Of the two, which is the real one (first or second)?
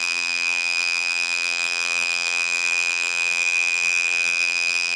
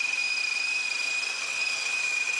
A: second